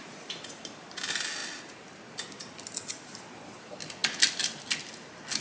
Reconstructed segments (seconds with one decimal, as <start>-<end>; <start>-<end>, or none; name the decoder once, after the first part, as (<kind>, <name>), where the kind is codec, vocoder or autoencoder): none